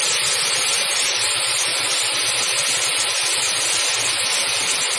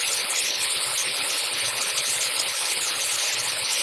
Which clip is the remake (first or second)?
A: second